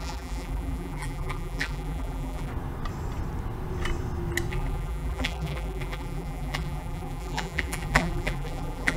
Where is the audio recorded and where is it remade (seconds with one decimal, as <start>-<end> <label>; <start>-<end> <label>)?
0.0-2.5 remade; 2.5-4.5 recorded; 4.5-9.0 remade